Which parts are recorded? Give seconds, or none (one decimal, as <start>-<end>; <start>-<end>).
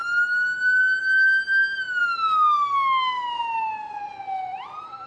0.0-5.1